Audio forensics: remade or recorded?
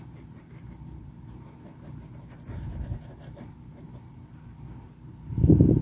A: remade